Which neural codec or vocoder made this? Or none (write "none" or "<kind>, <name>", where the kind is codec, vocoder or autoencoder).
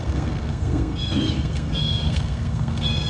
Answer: codec, SNAC